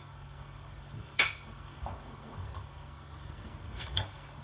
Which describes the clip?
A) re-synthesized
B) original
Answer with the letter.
A